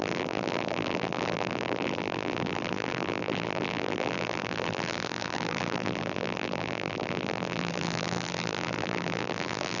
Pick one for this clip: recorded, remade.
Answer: remade